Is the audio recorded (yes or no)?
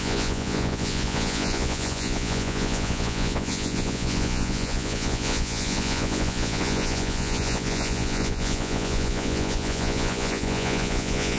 no